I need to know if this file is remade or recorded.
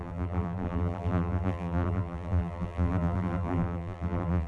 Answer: remade